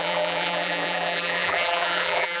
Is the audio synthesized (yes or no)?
yes